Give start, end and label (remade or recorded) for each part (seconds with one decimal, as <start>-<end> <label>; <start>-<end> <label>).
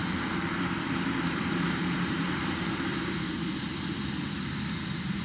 0.0-0.6 recorded; 0.6-2.4 remade; 2.4-5.2 recorded